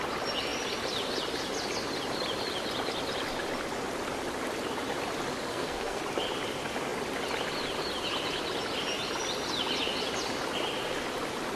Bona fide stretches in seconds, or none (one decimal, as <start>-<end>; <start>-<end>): 0.0-5.5; 6.0-11.6